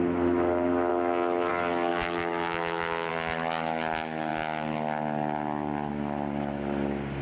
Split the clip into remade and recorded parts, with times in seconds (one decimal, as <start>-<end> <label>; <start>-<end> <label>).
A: 0.0-0.9 recorded; 0.9-1.5 remade; 1.5-1.9 recorded; 1.9-3.1 remade; 3.1-7.2 recorded